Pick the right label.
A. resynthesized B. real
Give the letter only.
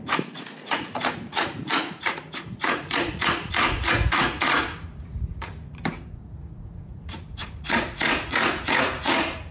A